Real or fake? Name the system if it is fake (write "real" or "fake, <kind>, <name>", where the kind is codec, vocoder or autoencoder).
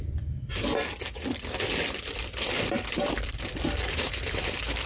fake, vocoder, BigVGAN v2